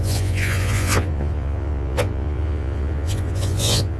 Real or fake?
fake